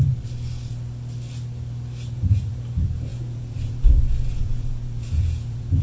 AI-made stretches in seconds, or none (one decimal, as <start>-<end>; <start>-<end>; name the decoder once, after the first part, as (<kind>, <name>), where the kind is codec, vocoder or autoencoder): 3.1-5.8 (vocoder, Vocos)